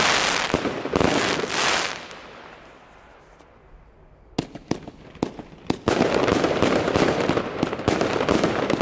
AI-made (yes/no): no